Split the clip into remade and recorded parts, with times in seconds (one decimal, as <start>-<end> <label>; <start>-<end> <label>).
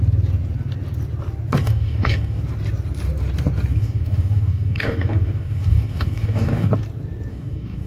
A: 0.0-1.6 recorded; 1.6-2.4 remade; 2.4-3.7 recorded; 3.7-6.7 remade; 6.7-7.3 recorded; 7.3-7.9 remade